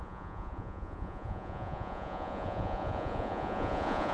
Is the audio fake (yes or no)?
yes